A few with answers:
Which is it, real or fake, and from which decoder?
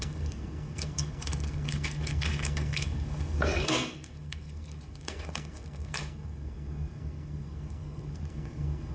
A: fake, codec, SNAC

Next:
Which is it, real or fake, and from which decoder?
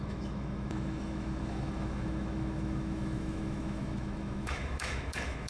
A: fake, autoencoder, DAC-VAE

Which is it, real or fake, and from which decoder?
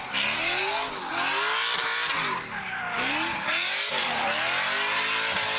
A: real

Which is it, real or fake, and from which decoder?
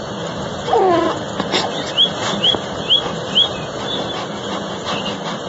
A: real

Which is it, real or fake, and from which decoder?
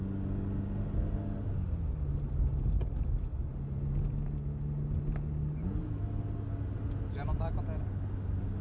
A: real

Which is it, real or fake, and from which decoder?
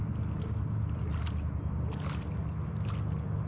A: real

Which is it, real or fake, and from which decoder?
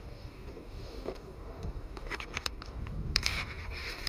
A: fake, codec, DAC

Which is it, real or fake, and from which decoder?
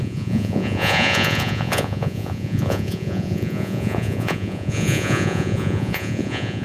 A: fake, vocoder, Vocos